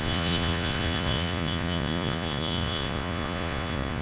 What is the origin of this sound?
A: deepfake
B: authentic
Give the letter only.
A